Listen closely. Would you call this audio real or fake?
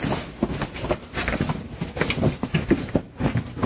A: real